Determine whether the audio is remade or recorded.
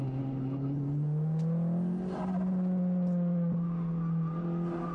recorded